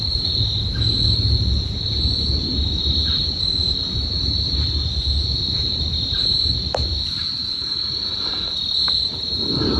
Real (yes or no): yes